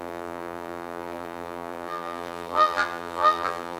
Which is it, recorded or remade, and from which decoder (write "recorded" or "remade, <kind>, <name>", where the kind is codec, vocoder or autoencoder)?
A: remade, vocoder, BigVGAN v2